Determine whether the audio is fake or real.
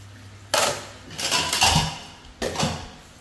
real